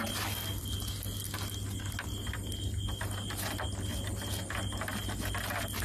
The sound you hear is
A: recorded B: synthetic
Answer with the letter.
A